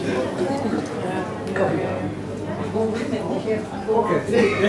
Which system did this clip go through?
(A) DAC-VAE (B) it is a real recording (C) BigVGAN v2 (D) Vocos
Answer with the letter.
B